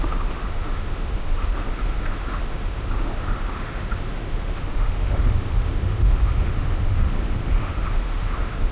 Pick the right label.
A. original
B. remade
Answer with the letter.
B